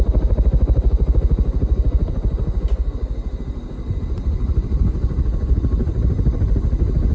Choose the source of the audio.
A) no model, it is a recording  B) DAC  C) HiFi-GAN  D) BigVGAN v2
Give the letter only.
A